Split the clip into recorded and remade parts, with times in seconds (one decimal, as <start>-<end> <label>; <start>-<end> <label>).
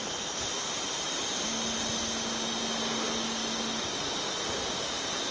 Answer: 0.0-5.3 recorded